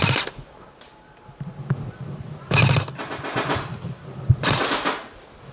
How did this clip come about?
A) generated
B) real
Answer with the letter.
B